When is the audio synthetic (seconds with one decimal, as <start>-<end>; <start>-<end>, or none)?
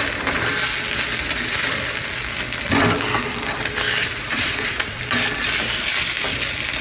4.0-5.0